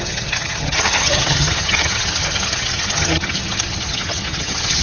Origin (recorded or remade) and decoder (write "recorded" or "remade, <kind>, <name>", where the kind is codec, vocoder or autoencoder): remade, vocoder, HiFi-GAN